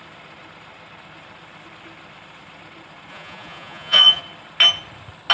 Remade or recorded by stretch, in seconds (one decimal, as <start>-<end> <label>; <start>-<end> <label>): 0.0-3.1 recorded; 3.1-4.2 remade; 4.2-5.3 recorded